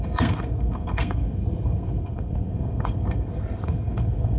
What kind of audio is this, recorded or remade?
remade